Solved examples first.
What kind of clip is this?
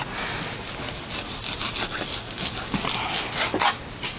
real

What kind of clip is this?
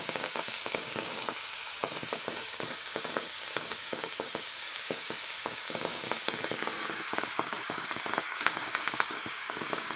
fake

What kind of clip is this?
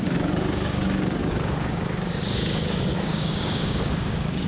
fake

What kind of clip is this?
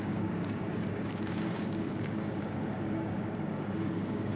fake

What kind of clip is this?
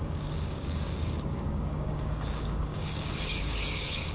fake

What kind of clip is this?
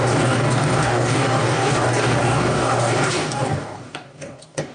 fake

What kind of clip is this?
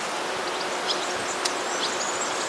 real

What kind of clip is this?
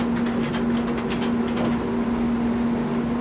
real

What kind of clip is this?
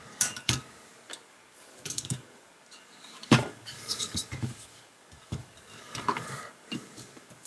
fake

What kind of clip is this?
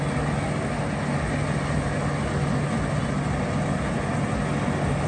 real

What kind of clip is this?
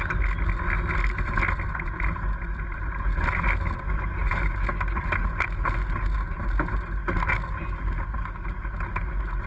real